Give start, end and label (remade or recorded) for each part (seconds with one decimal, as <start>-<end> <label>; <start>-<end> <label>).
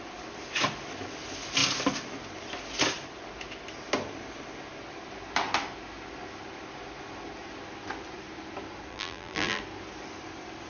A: 0.0-8.9 recorded; 8.9-9.6 remade; 9.6-10.7 recorded